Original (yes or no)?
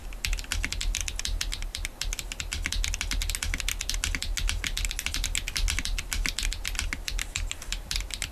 yes